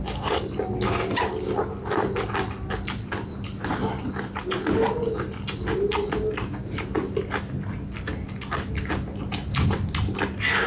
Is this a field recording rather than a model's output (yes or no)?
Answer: yes